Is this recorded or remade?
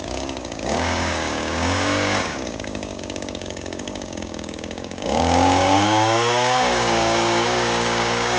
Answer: remade